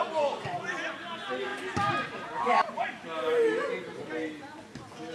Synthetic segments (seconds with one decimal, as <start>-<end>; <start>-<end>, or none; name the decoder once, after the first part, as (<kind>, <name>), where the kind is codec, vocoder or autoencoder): none